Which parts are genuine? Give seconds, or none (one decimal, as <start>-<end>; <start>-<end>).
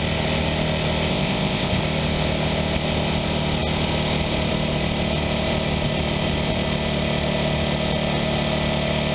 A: 0.0-1.1; 1.8-9.1